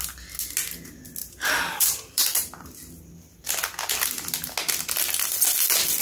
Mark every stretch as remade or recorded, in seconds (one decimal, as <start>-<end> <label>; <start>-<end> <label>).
0.0-1.2 recorded; 1.2-2.6 remade; 2.6-6.0 recorded